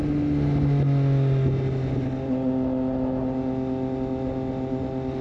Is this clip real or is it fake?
real